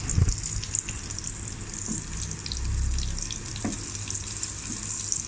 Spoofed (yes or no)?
no